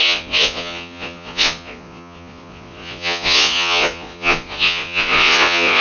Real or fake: fake